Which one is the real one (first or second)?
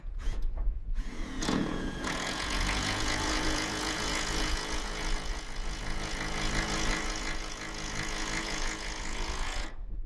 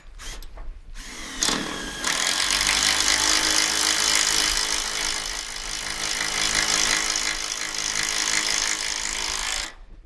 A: second